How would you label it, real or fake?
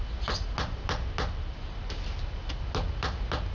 real